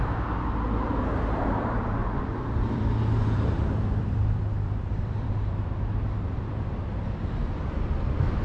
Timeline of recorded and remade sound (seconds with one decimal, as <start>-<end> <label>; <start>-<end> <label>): 0.0-2.0 recorded; 2.0-6.9 remade; 6.9-8.4 recorded